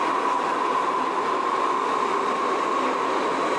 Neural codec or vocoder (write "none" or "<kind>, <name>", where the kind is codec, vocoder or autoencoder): none